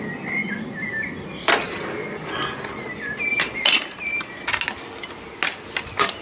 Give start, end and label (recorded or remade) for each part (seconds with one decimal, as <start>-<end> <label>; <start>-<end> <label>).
0.0-6.2 recorded